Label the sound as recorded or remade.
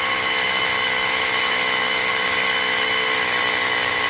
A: remade